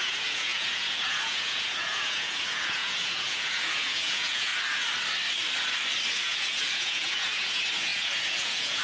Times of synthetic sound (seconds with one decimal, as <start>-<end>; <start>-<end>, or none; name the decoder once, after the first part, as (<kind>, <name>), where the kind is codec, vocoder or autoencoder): 0.0-4.5 (vocoder, Vocos); 6.2-8.8